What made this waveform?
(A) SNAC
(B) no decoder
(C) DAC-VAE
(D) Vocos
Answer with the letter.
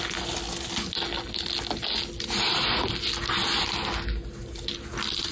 B